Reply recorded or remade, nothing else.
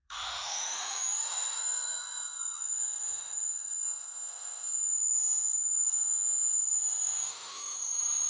remade